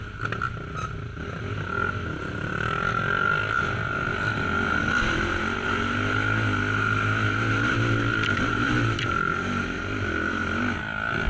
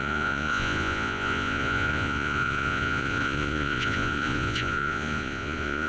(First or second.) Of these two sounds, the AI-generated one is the second